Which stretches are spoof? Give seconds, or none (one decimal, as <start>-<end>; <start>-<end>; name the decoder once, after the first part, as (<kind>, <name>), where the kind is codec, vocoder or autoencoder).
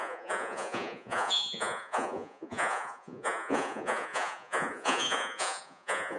0.0-6.2 (vocoder, Vocos)